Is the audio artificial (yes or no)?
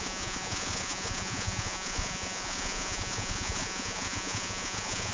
yes